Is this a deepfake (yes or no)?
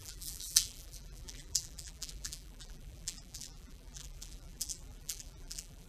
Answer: yes